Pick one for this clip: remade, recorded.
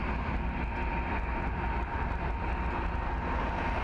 recorded